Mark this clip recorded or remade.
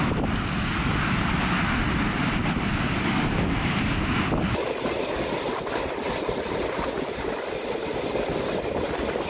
recorded